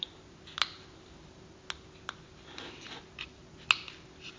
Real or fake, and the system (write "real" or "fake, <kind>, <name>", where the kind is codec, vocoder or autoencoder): real